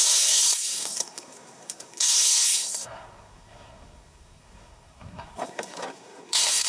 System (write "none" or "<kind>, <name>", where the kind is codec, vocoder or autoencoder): codec, SNAC